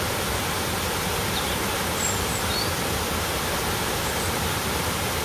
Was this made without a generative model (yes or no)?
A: yes